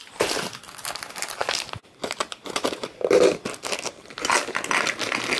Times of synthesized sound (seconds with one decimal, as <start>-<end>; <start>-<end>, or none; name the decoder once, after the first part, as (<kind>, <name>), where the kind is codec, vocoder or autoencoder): 0.0-0.6 (vocoder, BigVGAN v2); 1.4-4.0